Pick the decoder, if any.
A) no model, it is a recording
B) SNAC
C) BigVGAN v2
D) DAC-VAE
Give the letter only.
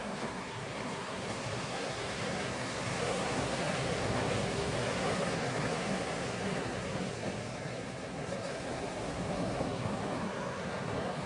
B